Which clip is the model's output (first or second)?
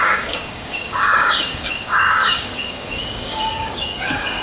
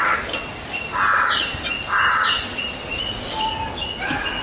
first